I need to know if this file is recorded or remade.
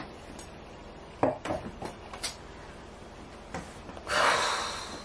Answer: recorded